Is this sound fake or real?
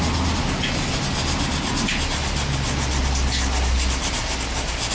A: real